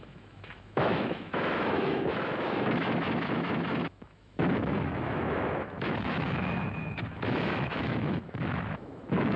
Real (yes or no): no